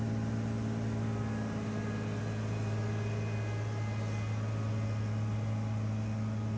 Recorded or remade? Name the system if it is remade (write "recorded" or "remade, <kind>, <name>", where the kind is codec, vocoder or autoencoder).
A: recorded